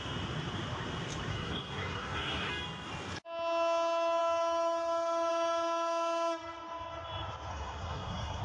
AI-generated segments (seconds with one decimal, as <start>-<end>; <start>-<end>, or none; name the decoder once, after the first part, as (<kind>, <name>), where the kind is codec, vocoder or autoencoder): 1.3-2.5 (codec, SNAC); 7.5-8.4